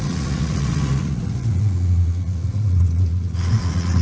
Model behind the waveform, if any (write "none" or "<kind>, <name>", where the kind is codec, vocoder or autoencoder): vocoder, Vocos